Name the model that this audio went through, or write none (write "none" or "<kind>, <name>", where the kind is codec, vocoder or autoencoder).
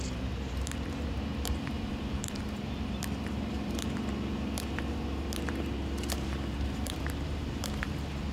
vocoder, BigVGAN v2